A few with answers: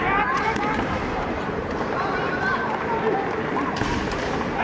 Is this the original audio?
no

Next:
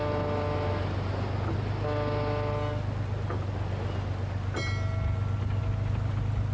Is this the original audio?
yes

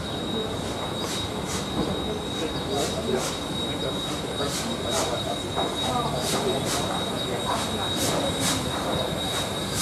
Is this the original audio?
yes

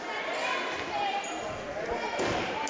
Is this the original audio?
no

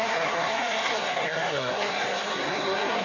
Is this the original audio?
no